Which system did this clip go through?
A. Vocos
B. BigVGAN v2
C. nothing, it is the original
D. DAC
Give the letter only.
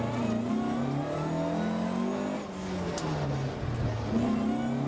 C